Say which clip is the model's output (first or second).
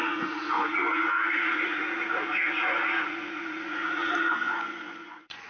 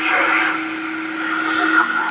first